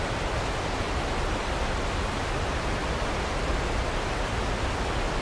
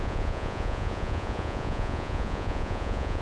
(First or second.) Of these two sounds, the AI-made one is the second